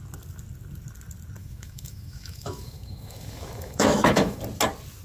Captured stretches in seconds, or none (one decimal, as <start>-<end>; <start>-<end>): 0.0-1.4; 4.4-5.0